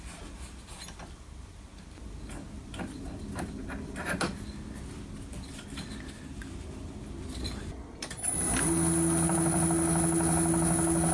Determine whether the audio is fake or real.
real